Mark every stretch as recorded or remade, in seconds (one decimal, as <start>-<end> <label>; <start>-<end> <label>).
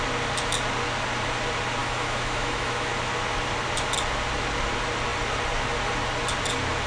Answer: 0.0-1.8 recorded; 1.8-2.9 remade; 2.9-6.9 recorded